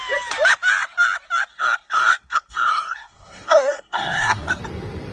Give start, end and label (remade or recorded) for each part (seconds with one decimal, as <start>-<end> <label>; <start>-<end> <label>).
0.0-1.5 recorded; 1.5-4.6 remade; 4.6-5.1 recorded